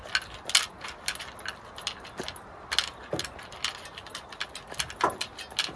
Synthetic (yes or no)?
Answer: no